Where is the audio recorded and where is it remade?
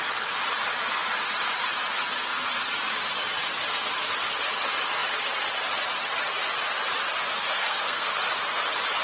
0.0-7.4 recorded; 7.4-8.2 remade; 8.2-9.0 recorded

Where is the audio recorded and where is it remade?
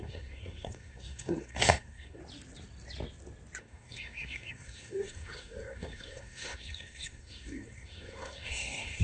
0.0-2.2 remade; 2.2-3.6 recorded; 3.6-9.0 remade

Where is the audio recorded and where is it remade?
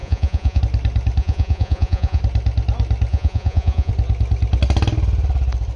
0.0-0.6 remade; 0.6-1.2 recorded; 1.2-2.2 remade; 2.2-3.1 recorded; 3.1-3.9 remade; 3.9-5.8 recorded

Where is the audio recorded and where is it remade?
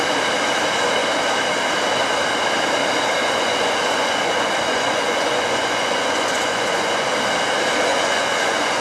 0.0-3.2 recorded; 3.2-7.1 remade; 7.1-7.9 recorded; 7.9-8.8 remade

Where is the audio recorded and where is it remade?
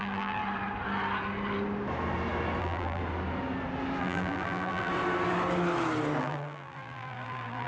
0.0-0.4 remade; 0.4-2.6 recorded; 2.6-3.0 remade; 3.0-4.0 recorded; 4.0-4.9 remade; 4.9-6.2 recorded; 6.2-7.7 remade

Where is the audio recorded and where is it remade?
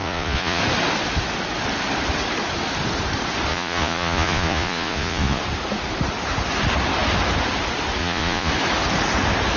0.0-0.6 remade; 0.6-3.5 recorded; 3.5-5.4 remade; 5.4-8.0 recorded; 8.0-8.5 remade; 8.5-9.6 recorded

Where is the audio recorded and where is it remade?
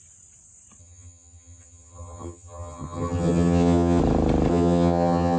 0.0-0.8 recorded; 0.8-4.0 remade; 4.0-4.5 recorded; 4.5-5.4 remade